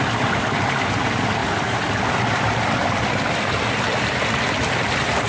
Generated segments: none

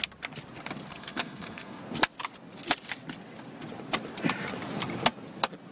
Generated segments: 0.9-1.8 (codec, SNAC)

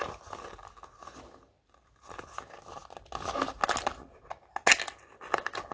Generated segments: none

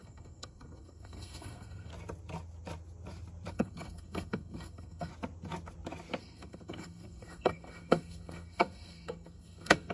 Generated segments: 0.0-1.9 (codec, SNAC); 3.5-5.1; 6.2-9.9